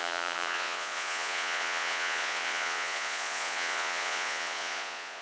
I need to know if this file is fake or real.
fake